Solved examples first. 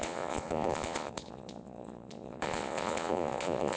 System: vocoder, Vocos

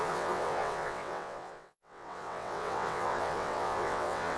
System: vocoder, WaveNeXt